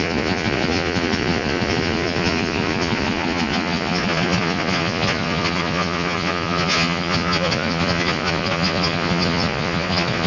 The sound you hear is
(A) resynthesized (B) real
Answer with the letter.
A